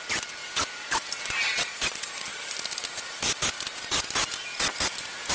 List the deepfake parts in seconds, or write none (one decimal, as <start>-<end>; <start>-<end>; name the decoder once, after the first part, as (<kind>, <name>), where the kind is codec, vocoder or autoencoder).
0.0-0.4 (vocoder, BigVGAN v2); 1.2-2.3